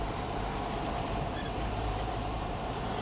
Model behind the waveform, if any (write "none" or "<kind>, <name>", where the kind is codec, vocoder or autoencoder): vocoder, BigVGAN v2